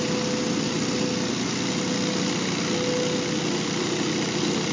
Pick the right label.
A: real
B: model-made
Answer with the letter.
A